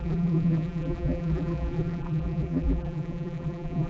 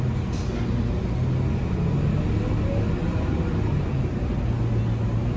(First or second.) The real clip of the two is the second